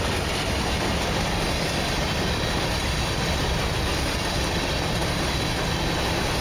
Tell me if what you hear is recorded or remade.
recorded